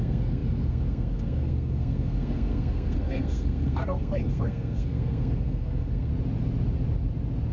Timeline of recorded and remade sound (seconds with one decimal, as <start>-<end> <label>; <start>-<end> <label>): 0.0-6.1 remade; 6.1-7.5 recorded